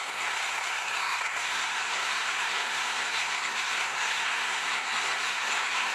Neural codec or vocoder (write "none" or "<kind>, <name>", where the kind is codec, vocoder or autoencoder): codec, SNAC